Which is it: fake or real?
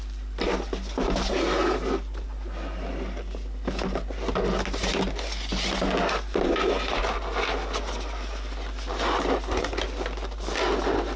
real